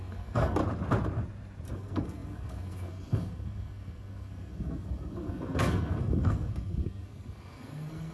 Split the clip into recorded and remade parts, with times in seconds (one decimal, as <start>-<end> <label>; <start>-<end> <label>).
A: 0.0-0.6 remade; 0.6-1.7 recorded; 1.7-8.1 remade

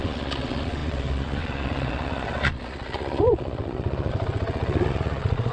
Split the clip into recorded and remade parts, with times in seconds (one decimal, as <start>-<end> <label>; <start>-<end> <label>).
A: 0.0-5.5 remade

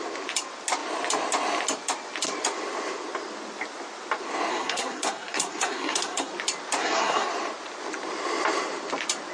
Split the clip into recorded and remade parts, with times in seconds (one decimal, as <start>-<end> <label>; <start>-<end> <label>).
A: 0.0-4.5 recorded; 4.5-6.3 remade; 6.3-6.8 recorded; 6.8-7.3 remade; 7.3-9.3 recorded

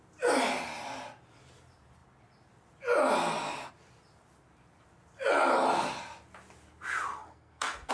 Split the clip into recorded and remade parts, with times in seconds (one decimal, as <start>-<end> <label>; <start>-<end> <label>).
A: 0.0-7.1 recorded; 7.1-7.9 remade

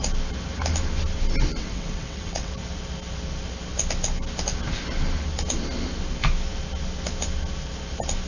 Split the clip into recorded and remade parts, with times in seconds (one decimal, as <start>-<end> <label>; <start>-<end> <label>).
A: 0.0-1.5 recorded; 1.5-2.5 remade; 2.5-8.3 recorded